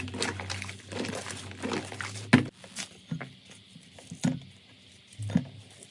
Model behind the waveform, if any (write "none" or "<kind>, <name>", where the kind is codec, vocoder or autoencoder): none